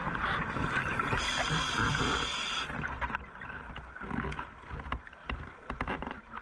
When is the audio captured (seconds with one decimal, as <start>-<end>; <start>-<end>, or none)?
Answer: 0.0-5.2; 5.9-6.4